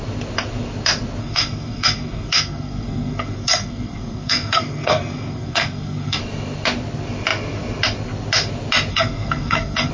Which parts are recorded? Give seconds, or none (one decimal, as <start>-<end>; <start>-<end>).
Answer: 0.0-1.2; 6.2-8.9